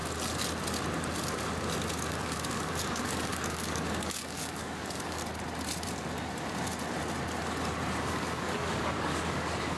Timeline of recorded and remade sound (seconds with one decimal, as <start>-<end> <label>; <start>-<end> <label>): 0.0-2.1 recorded; 2.1-5.2 remade; 5.2-8.0 recorded; 8.0-9.8 remade